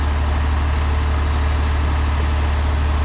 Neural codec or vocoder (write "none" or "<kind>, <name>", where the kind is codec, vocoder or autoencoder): none